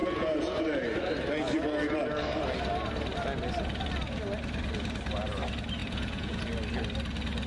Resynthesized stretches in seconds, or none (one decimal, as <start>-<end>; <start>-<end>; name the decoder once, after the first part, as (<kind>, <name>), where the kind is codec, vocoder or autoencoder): 0.0-0.6 (vocoder, Vocos); 5.8-6.4